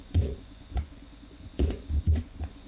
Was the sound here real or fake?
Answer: fake